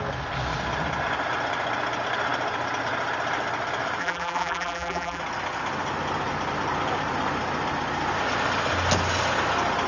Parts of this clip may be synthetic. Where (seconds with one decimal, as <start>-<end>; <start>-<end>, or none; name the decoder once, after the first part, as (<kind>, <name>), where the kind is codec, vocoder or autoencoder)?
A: 4.0-5.2 (vocoder, BigVGAN v2)